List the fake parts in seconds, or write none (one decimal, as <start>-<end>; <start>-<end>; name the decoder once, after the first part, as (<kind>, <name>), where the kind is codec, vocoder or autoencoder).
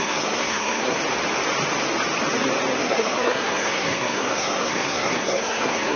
0.0-1.0 (codec, SNAC); 2.8-6.0